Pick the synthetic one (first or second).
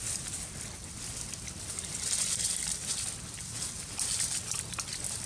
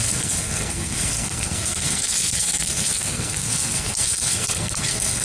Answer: second